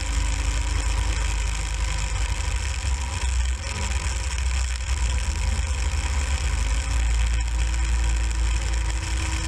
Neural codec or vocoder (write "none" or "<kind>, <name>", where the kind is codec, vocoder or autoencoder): none